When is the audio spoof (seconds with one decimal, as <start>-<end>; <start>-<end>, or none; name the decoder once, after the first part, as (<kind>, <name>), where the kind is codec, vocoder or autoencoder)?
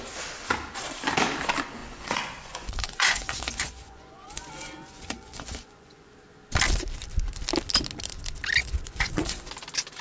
1.8-6.1 (vocoder, Vocos); 8.6-9.5